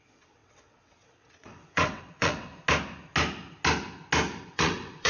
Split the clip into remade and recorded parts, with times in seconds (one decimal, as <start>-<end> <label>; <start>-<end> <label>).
0.0-2.5 remade; 2.5-4.4 recorded; 4.4-5.1 remade